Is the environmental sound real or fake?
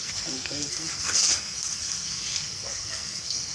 fake